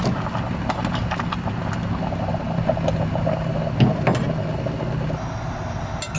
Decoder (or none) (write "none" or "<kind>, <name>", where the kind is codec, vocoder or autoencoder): none